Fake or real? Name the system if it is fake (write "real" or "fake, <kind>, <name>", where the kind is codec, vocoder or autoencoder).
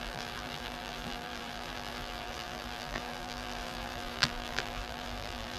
fake, vocoder, BigVGAN v2